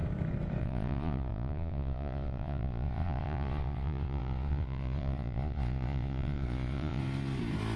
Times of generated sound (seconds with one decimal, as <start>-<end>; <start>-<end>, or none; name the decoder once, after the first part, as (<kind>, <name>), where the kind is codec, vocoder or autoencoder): 0.6-7.0 (vocoder, Vocos)